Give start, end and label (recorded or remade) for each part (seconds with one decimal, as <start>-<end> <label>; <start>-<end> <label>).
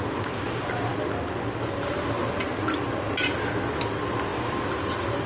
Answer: 0.0-5.3 recorded